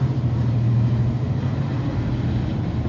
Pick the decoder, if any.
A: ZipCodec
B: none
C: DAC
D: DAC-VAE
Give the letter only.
B